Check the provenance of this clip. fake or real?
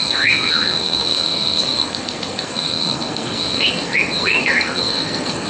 fake